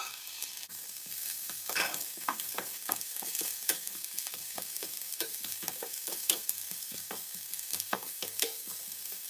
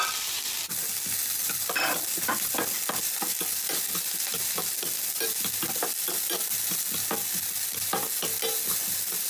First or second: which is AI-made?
first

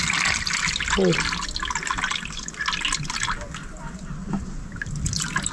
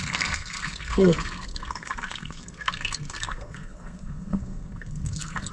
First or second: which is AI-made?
second